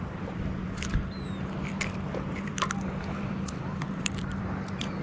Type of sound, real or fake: fake